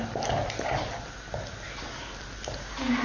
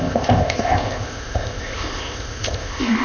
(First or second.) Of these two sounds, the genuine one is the first